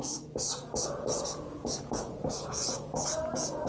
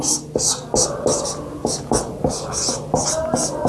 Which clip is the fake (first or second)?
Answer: first